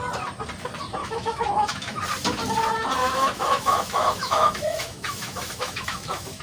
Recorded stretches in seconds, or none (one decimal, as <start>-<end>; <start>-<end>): 0.0-1.0; 2.0-3.0